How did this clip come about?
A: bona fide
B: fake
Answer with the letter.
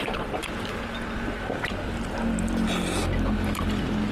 A